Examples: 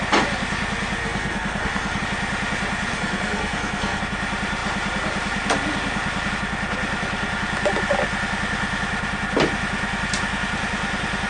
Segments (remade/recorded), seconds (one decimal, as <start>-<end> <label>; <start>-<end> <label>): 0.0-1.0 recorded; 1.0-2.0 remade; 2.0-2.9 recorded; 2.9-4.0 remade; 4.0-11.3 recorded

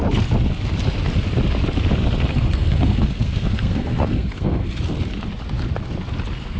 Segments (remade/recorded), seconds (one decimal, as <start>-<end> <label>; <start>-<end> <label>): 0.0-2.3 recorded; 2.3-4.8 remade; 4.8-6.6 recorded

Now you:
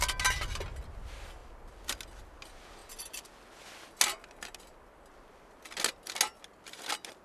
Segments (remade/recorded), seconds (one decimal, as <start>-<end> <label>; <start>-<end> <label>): 0.0-7.2 recorded